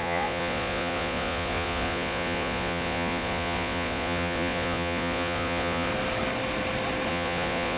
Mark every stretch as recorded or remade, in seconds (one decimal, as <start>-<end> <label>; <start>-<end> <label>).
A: 0.0-5.9 remade; 5.9-7.1 recorded; 7.1-7.8 remade